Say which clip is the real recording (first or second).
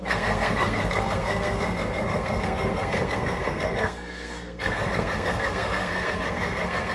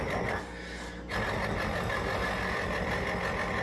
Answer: second